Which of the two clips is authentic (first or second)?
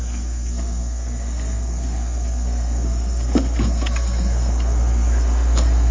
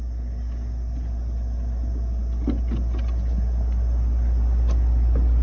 second